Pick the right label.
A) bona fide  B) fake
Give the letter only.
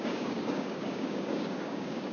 B